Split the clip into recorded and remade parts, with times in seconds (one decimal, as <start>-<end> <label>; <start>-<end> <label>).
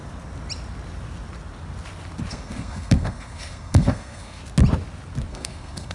0.0-2.3 recorded; 2.3-4.4 remade; 4.4-5.3 recorded; 5.3-5.9 remade